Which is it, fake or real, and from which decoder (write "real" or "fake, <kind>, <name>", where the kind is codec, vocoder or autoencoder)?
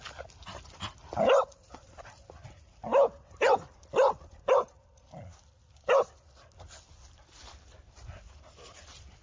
real